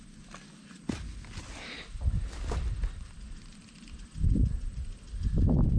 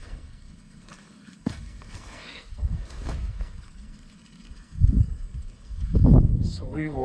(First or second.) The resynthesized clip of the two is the second